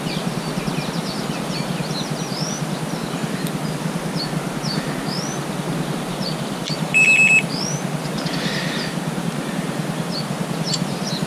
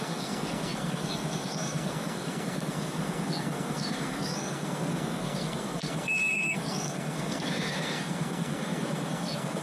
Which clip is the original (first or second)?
first